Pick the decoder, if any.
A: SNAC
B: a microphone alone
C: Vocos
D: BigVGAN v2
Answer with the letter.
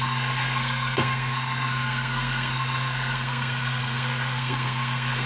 A